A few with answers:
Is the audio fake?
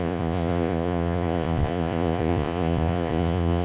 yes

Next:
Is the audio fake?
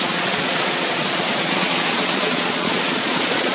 yes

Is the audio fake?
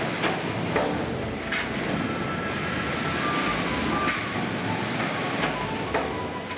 no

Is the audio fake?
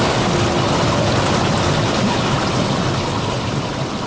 no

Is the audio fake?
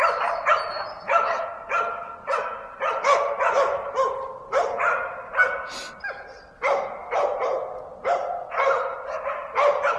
no